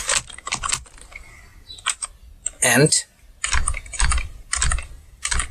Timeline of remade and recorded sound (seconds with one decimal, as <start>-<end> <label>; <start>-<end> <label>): 0.0-5.5 recorded